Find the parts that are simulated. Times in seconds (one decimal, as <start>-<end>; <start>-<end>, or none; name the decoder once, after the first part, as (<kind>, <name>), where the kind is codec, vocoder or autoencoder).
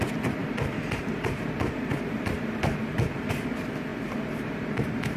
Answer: 0.4-3.5 (vocoder, BigVGAN v2); 3.9-5.2